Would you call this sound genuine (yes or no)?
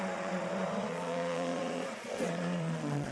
no